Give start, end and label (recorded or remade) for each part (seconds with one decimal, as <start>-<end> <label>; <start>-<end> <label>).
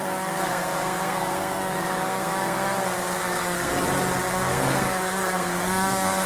0.0-3.7 remade; 3.7-4.3 recorded; 4.3-6.3 remade